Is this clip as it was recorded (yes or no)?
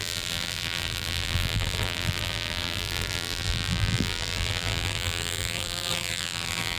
no